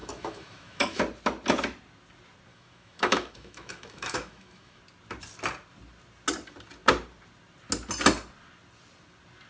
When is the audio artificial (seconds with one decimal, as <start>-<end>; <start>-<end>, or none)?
0.0-1.0; 2.5-4.8

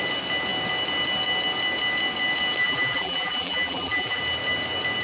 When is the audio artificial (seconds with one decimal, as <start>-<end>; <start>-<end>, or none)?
2.6-4.2

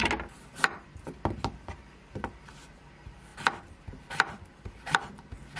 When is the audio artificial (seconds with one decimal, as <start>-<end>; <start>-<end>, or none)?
0.5-2.5; 3.3-5.1

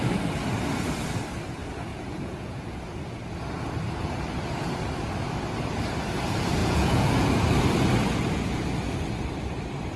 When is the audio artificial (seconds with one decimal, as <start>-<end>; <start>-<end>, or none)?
1.9-2.8; 6.6-7.4

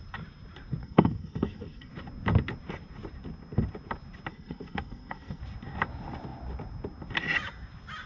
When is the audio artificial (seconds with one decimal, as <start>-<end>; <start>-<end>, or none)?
0.8-1.9; 4.3-5.4

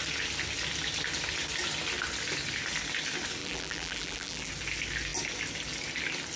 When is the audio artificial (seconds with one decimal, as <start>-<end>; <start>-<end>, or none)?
3.4-4.5